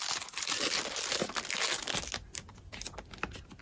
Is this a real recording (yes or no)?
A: yes